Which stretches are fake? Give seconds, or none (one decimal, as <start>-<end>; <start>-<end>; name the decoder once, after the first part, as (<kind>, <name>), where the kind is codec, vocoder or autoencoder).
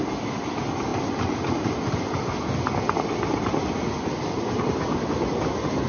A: none